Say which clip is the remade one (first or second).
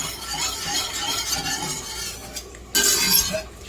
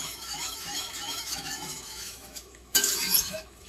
second